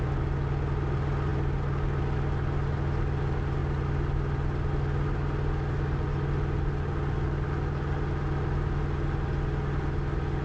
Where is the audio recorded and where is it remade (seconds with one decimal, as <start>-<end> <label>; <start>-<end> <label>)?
0.0-10.4 recorded